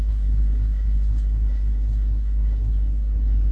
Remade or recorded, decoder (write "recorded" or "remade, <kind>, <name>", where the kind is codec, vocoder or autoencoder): remade, codec, SNAC